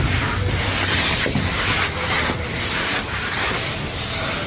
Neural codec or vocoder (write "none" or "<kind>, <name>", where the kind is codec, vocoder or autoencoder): none